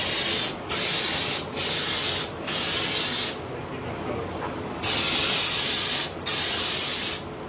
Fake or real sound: real